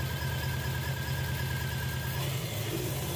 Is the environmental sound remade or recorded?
recorded